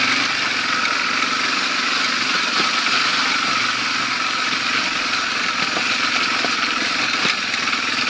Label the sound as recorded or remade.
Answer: recorded